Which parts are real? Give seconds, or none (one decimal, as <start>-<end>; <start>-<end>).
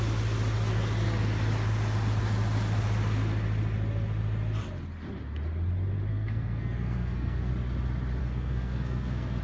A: 0.0-6.1; 7.5-8.2